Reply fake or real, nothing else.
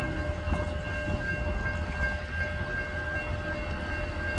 real